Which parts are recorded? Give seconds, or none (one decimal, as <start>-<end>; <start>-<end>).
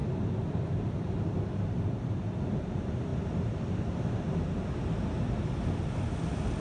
0.0-6.6